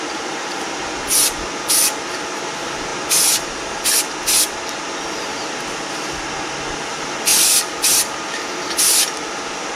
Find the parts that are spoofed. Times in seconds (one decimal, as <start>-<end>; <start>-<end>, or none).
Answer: none